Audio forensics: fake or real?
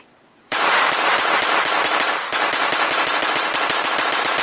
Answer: fake